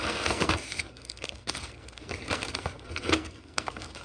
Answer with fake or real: fake